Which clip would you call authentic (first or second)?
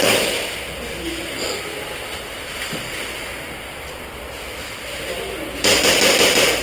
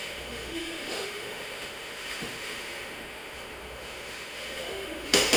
first